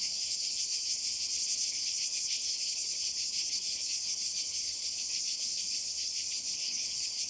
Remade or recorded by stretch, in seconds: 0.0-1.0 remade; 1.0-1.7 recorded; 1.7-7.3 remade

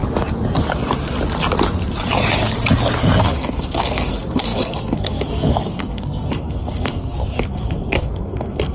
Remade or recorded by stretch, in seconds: 0.0-3.2 recorded; 3.2-8.7 remade

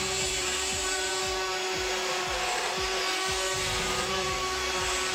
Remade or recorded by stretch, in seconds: 0.0-1.1 remade; 1.1-3.9 recorded; 3.9-5.1 remade

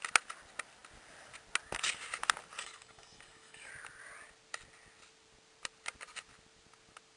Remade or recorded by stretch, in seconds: 0.0-2.6 recorded; 2.6-3.7 remade; 3.7-7.2 recorded